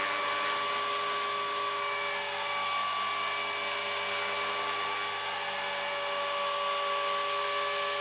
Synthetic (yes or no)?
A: no